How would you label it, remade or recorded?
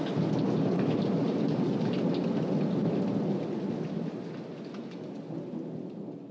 recorded